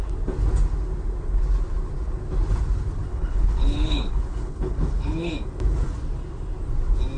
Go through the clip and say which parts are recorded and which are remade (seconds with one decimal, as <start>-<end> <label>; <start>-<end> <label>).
0.0-3.1 recorded; 3.1-5.3 remade; 5.3-7.2 recorded